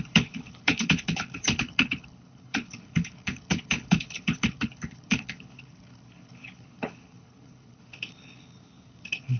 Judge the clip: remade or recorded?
remade